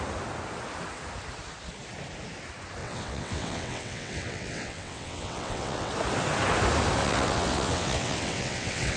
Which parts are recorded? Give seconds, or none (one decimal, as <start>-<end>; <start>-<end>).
0.0-2.8; 5.9-7.0